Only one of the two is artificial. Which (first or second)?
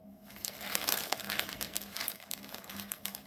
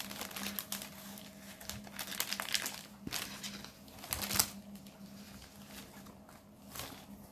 first